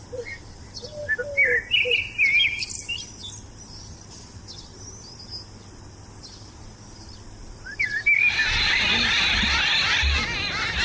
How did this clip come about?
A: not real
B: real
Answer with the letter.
B